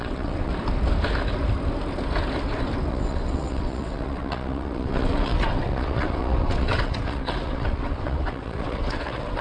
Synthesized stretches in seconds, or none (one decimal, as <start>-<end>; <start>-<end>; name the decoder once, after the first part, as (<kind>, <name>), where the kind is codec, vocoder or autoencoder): 0.0-0.5 (vocoder, WaveNeXt); 2.9-9.4